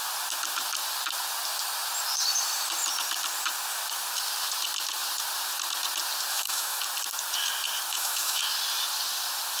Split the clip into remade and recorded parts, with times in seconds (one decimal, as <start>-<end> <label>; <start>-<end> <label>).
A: 0.0-6.3 recorded; 6.3-6.8 remade; 6.8-7.9 recorded; 7.9-8.4 remade; 8.4-9.6 recorded